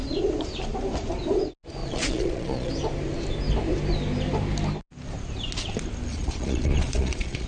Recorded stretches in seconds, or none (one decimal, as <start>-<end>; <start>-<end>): 0.0-1.8; 2.7-6.1